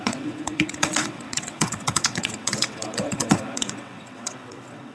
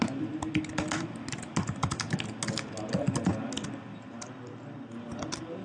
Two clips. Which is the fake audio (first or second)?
first